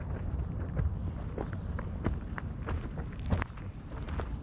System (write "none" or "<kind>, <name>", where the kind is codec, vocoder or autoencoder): vocoder, BigVGAN v2